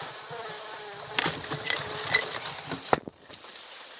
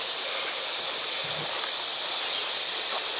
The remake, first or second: first